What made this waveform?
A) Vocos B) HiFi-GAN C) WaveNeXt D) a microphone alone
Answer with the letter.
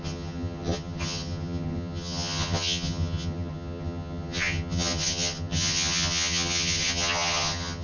B